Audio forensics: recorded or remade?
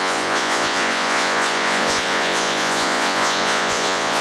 remade